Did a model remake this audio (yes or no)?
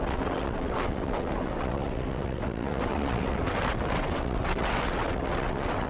yes